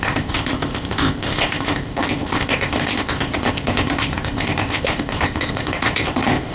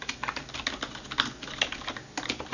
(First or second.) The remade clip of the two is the first